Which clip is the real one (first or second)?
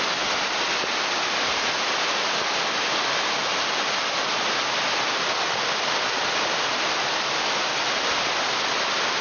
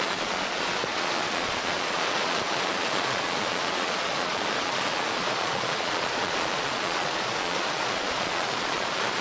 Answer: first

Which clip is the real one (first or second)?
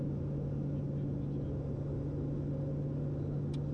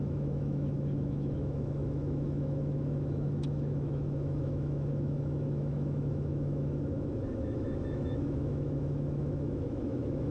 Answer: first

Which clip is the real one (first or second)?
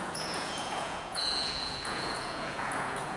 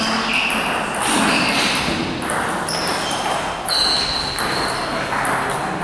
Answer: second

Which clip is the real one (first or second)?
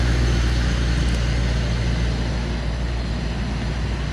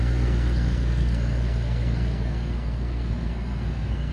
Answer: first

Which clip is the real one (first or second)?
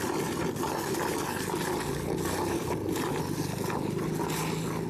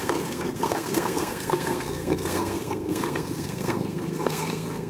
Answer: first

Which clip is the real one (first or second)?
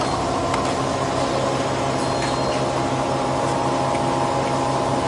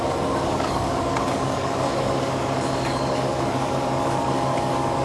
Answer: first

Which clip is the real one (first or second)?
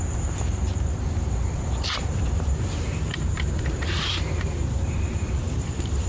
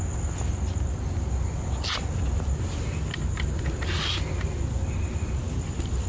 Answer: second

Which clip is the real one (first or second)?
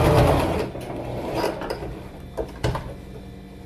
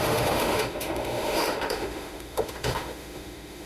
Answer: first